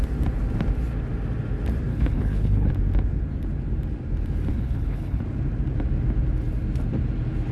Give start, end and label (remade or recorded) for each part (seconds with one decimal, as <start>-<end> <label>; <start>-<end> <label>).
0.0-1.9 recorded; 1.9-2.7 remade; 2.7-4.5 recorded; 4.5-5.2 remade; 5.2-7.5 recorded